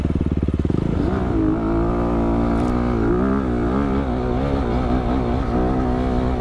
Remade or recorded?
recorded